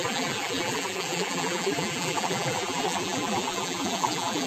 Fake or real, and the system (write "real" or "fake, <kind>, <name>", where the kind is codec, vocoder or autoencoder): fake, vocoder, BigVGAN v2